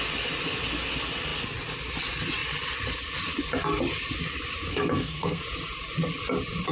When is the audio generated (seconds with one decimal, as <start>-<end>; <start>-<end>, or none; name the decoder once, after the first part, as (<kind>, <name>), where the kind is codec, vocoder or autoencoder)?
4.7-5.4 (codec, SNAC)